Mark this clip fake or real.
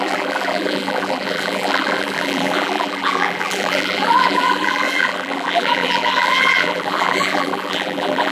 fake